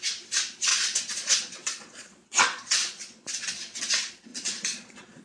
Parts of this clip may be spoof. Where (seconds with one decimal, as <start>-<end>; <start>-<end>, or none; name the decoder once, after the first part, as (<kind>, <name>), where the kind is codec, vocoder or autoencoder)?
0.7-3.8 (vocoder, Vocos); 4.3-5.2

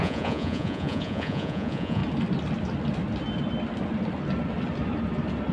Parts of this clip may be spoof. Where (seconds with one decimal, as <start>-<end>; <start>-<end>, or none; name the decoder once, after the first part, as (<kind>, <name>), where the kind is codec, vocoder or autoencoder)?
0.0-2.0 (vocoder, Vocos)

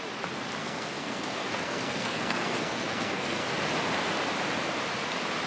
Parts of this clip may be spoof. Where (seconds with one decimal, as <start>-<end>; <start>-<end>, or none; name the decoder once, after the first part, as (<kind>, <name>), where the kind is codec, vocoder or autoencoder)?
0.6-3.5 (codec, SNAC)

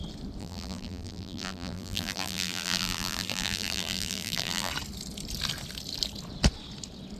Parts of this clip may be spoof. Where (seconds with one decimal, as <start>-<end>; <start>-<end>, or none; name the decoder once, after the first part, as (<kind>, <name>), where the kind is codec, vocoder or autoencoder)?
0.4-4.7 (vocoder, BigVGAN v2)

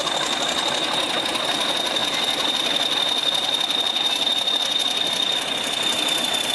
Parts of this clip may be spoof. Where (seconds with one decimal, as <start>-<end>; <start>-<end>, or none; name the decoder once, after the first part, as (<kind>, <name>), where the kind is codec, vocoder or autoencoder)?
none